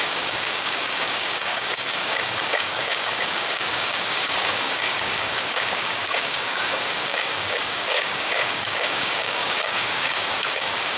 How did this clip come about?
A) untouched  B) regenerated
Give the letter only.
B